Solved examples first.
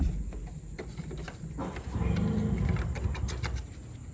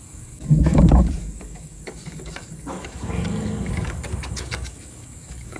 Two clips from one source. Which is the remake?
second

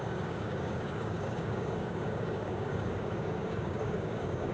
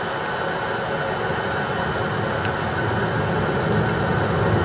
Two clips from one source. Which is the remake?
first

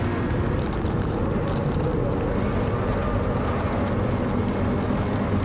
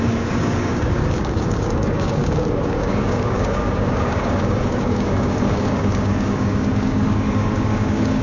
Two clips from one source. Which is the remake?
second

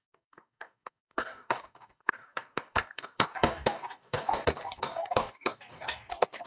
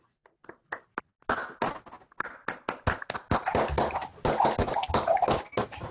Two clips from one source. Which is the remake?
first